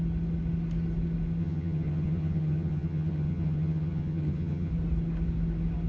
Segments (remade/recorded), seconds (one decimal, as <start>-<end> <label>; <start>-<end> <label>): 0.0-1.4 recorded; 1.4-4.7 remade; 4.7-5.9 recorded